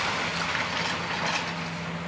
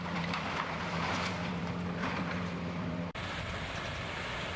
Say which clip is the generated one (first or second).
second